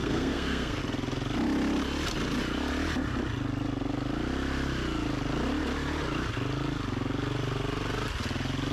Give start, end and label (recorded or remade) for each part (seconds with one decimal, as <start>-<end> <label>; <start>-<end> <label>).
0.0-0.8 remade; 0.8-8.7 recorded